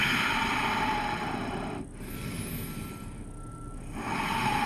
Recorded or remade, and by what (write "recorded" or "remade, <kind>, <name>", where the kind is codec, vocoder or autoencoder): recorded